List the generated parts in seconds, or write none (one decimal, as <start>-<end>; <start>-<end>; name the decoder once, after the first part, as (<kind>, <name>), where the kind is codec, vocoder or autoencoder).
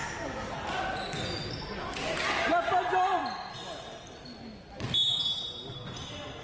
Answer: none